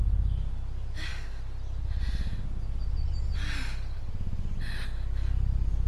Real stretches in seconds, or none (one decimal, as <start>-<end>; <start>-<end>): 0.0-5.9